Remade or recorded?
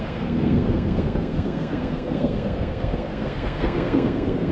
remade